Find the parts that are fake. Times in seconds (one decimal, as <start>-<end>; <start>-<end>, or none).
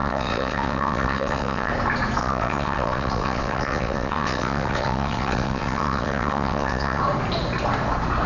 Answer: 0.0-1.7; 2.2-7.0